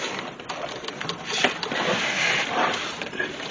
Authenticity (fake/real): real